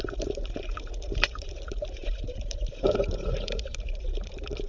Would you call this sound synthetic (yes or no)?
yes